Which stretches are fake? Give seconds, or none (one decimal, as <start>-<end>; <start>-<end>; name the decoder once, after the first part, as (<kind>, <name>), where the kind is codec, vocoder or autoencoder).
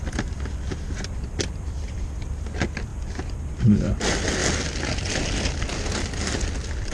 none